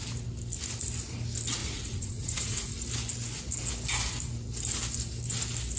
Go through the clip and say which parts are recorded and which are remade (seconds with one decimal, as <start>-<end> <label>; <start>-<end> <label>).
0.0-1.6 recorded; 1.6-2.7 remade; 2.7-5.8 recorded